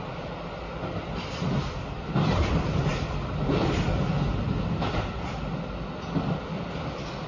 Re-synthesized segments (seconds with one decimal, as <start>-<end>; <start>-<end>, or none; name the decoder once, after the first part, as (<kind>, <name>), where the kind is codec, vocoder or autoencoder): none

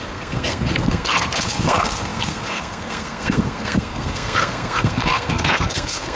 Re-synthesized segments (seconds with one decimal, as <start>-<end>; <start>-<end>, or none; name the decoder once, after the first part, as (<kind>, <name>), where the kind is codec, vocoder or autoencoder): 0.0-6.2 (codec, SNAC)